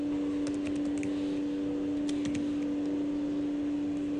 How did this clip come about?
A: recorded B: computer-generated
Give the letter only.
A